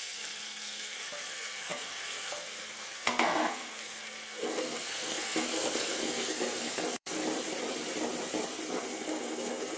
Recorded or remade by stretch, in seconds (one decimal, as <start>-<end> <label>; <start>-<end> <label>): 0.0-7.2 remade; 7.2-8.7 recorded; 8.7-9.8 remade